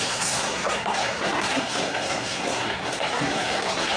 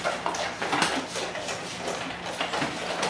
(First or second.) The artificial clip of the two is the first